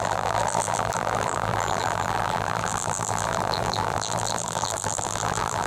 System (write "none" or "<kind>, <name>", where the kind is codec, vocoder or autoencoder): vocoder, BigVGAN v2